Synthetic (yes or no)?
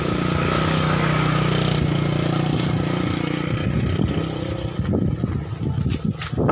no